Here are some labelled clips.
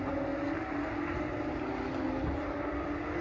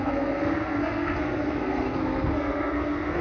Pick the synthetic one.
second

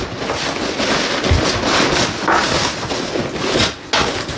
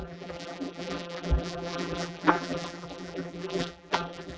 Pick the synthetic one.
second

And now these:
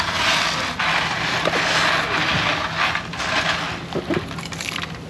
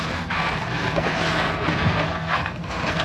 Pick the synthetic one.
second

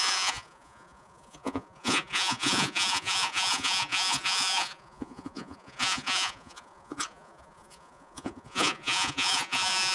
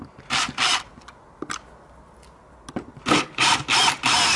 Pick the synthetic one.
first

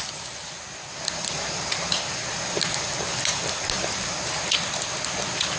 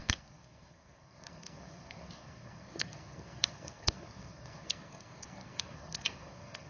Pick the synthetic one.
second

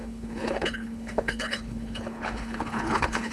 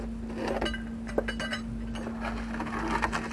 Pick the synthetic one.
first